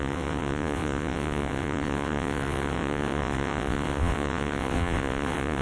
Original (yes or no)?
no